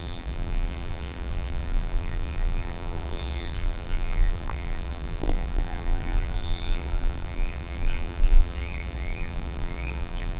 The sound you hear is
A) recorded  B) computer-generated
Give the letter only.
B